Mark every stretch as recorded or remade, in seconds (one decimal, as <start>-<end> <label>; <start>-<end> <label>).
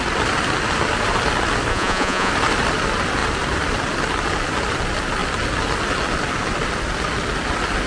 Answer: 0.0-1.7 recorded; 1.7-2.3 remade; 2.3-7.9 recorded